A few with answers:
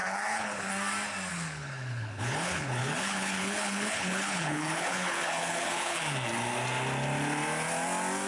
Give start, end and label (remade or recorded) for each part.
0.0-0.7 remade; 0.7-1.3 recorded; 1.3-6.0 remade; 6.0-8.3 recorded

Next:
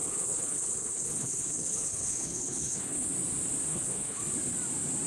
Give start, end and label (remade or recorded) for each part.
0.0-3.1 remade; 3.1-3.7 recorded; 3.7-4.2 remade; 4.2-5.1 recorded

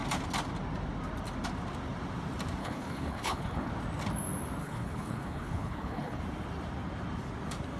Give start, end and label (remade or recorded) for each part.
0.0-2.6 recorded; 2.6-3.7 remade; 3.7-4.6 recorded; 4.6-6.2 remade; 6.2-7.8 recorded

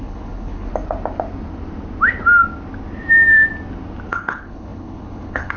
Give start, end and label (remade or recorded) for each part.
0.0-0.7 remade; 0.7-4.1 recorded; 4.1-5.6 remade

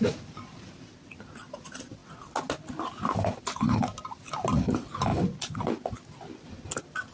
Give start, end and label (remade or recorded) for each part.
0.0-7.1 recorded

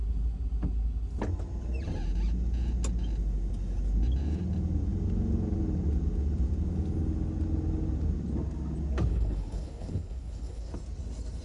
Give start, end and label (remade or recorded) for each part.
0.0-9.1 recorded; 9.1-10.7 remade; 10.7-11.4 recorded

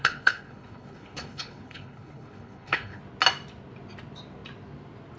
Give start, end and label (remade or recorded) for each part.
0.0-3.0 remade; 3.0-5.2 recorded